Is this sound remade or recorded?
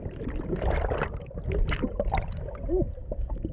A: recorded